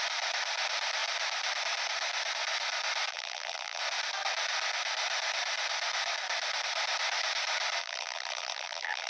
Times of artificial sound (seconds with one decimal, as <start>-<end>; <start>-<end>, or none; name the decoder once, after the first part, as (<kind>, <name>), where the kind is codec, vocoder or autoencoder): 3.1-3.8 (vocoder, BigVGAN v2); 7.8-9.1